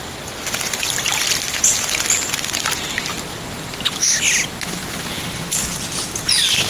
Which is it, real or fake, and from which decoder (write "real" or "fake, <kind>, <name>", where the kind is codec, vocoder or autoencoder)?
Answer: real